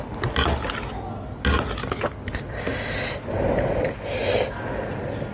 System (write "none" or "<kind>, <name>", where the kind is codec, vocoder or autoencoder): none